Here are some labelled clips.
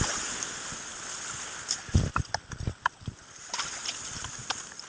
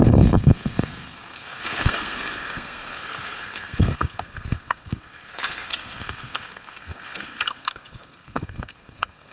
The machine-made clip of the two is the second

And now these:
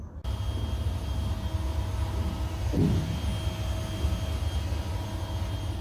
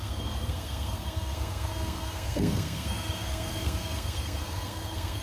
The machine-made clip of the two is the second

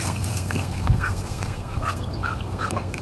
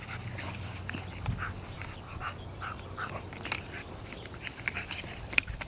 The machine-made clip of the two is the first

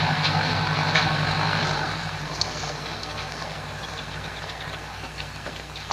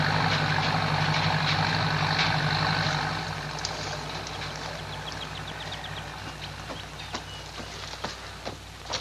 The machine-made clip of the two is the first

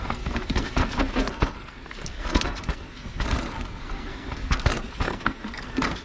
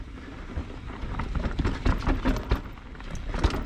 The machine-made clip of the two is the first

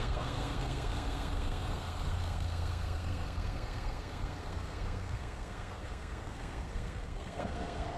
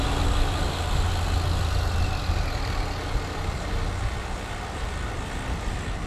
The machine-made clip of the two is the first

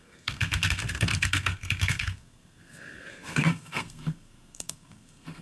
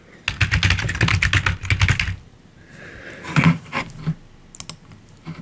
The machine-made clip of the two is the first